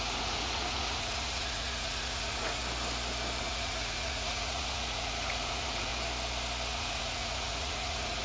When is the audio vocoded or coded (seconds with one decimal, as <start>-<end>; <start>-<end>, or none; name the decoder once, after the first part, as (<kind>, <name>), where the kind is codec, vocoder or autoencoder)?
0.0-2.6 (vocoder, Vocos); 3.4-5.9; 6.7-8.2